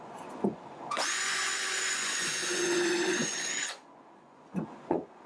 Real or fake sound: fake